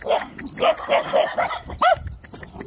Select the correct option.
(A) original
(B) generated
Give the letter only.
B